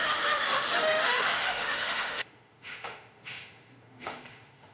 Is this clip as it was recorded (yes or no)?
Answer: no